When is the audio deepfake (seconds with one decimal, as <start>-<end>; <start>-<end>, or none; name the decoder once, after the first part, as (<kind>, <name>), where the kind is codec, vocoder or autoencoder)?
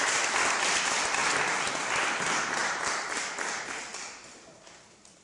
none